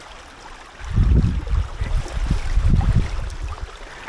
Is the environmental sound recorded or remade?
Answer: recorded